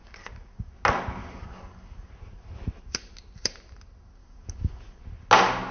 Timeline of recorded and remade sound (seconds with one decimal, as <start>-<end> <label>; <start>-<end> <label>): 0.0-0.7 remade; 0.7-1.2 recorded; 1.2-2.1 remade; 2.1-4.2 recorded; 4.2-5.0 remade; 5.0-5.7 recorded